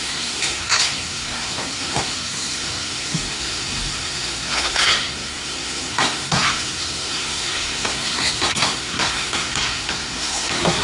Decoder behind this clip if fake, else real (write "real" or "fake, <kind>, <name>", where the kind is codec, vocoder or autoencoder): fake, codec, SNAC